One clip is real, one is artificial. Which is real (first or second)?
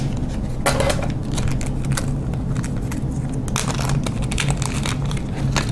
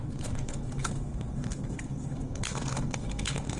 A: first